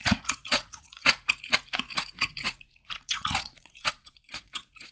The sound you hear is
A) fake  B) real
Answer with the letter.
A